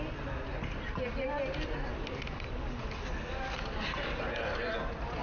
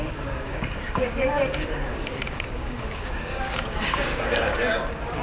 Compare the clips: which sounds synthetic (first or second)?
second